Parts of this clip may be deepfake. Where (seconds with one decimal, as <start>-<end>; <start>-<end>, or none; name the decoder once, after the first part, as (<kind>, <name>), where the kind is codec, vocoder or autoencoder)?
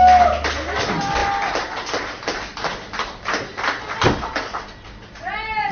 none